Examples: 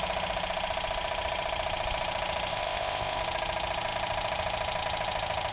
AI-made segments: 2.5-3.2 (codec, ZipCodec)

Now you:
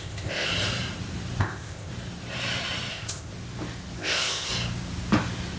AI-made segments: 0.0-0.5 (codec, ZipCodec); 1.4-1.9; 2.9-3.3; 4.0-4.5

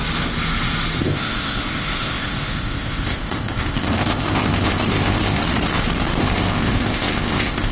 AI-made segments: 1.0-5.4 (codec, ZipCodec); 6.2-7.7

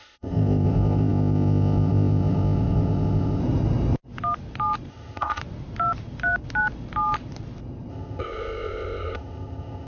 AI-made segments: 0.0-3.4 (codec, ZipCodec); 4.9-5.4; 7.9-9.9

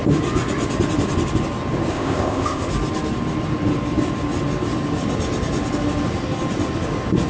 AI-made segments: 1.9-2.7 (codec, ZipCodec)

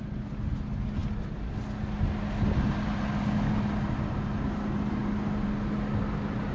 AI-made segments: none

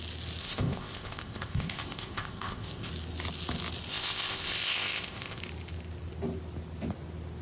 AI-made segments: 0.4-2.9 (codec, ZipCodec); 3.9-5.4

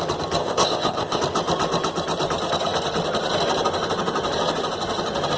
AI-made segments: 0.4-1.2 (codec, ZipCodec)